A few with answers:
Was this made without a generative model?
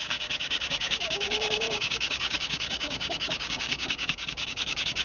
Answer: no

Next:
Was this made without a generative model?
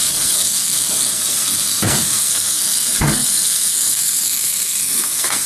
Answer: no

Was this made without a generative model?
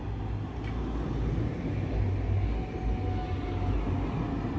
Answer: yes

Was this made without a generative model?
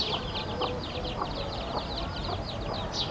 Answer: yes